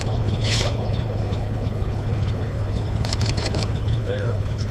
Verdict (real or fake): fake